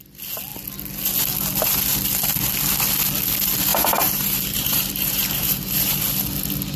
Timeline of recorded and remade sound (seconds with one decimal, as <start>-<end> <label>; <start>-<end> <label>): 0.0-3.7 recorded; 3.7-6.0 remade; 6.0-6.8 recorded